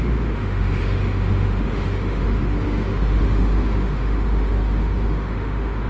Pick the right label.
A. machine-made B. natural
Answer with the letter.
A